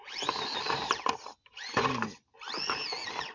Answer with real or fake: real